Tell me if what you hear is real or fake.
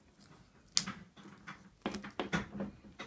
real